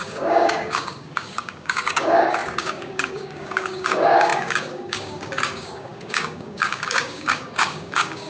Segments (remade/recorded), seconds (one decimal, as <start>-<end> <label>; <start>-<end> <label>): 0.0-8.3 remade